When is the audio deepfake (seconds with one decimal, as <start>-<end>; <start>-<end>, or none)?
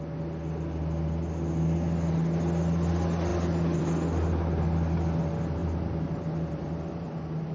5.6-6.9